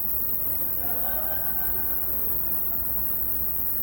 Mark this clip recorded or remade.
recorded